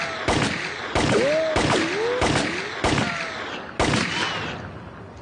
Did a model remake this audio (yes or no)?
no